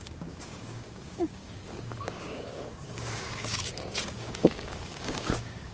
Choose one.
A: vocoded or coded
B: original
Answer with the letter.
A